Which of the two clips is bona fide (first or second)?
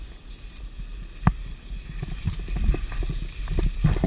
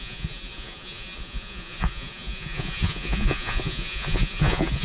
first